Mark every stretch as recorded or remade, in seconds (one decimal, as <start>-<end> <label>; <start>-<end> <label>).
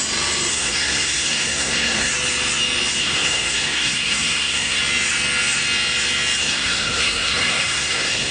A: 0.0-0.5 recorded; 0.5-2.1 remade; 2.1-3.0 recorded; 3.0-4.8 remade; 4.8-6.4 recorded; 6.4-8.3 remade